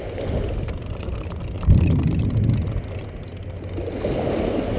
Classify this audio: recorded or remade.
recorded